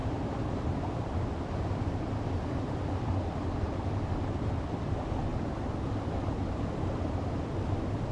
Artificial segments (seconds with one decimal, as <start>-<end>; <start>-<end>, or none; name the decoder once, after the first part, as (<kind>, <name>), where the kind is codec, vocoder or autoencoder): 0.0-0.7 (vocoder, BigVGAN v2)